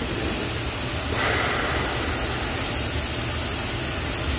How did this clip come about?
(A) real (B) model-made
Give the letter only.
A